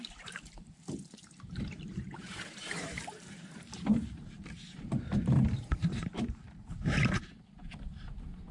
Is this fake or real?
fake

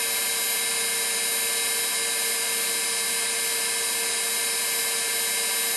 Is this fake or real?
real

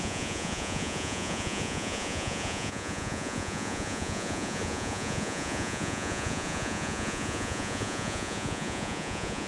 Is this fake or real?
fake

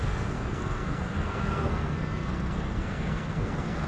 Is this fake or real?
fake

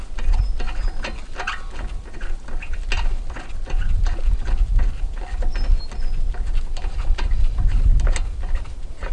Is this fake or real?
real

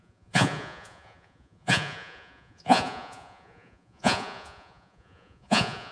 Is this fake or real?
fake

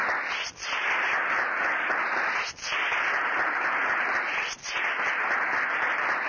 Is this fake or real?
real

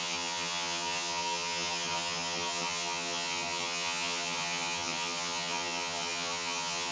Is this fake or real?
fake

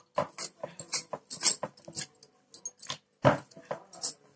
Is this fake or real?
real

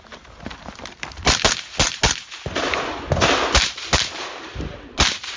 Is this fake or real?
real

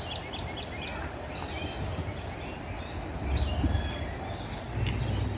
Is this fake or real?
real